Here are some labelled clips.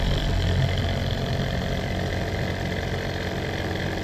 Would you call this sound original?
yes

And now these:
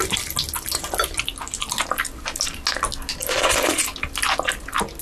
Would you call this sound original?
yes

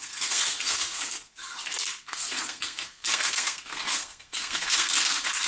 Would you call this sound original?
no